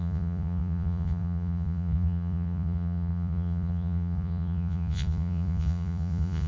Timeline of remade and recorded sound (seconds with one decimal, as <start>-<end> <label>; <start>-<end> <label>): 0.0-6.5 remade